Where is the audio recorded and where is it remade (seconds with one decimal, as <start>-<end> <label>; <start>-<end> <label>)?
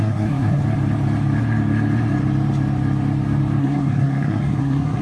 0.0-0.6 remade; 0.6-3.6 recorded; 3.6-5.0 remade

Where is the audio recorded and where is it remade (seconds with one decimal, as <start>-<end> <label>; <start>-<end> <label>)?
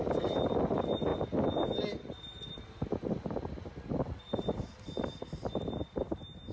0.0-6.5 recorded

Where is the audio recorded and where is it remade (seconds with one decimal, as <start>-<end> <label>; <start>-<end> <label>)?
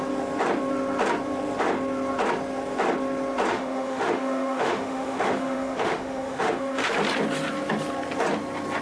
0.0-3.5 recorded; 3.5-6.9 remade; 6.9-8.8 recorded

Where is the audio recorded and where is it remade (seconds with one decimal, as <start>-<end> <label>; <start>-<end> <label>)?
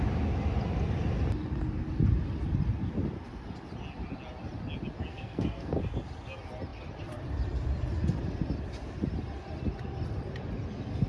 0.0-5.1 recorded; 5.1-5.8 remade; 5.8-11.1 recorded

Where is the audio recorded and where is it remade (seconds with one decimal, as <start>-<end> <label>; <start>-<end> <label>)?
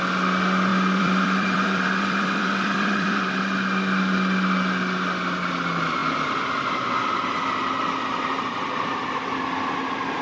0.0-0.7 recorded; 0.7-3.4 remade; 3.4-10.2 recorded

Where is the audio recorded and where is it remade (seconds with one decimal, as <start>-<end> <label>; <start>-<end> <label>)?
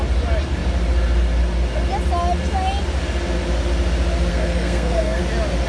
0.0-4.3 recorded; 4.3-5.2 remade; 5.2-5.7 recorded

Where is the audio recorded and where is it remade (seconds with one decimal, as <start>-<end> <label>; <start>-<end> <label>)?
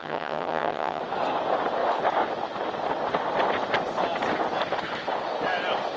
0.0-1.0 remade; 1.0-6.0 recorded